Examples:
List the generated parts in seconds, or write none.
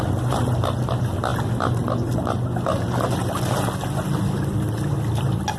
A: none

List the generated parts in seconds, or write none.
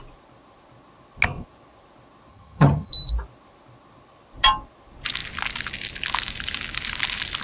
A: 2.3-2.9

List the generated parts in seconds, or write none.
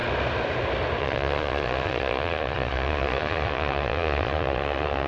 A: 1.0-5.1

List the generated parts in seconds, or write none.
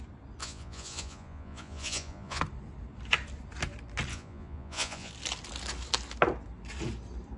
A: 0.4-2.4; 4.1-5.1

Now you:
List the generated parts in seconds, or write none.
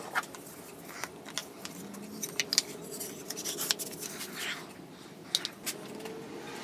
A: none